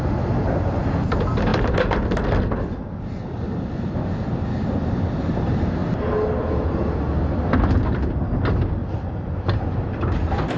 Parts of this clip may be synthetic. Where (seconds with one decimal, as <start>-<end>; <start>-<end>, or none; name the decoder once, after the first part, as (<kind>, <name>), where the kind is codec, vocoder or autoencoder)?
1.5-2.0 (vocoder, BigVGAN v2)